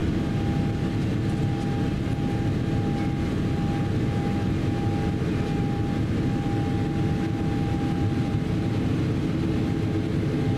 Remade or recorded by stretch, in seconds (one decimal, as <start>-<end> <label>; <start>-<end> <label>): 0.0-10.6 recorded